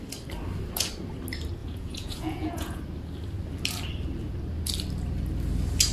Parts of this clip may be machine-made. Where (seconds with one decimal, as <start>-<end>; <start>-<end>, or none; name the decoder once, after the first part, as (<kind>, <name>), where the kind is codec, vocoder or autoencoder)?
1.6-2.8 (vocoder, Vocos)